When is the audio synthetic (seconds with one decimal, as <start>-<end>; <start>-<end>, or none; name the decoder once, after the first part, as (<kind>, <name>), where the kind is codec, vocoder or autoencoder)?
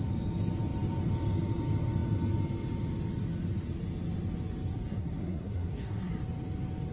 4.7-6.1 (codec, SNAC)